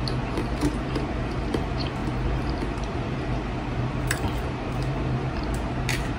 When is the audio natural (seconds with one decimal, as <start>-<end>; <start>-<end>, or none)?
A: none